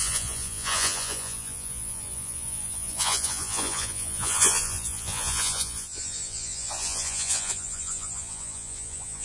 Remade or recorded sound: remade